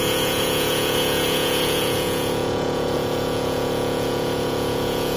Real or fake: fake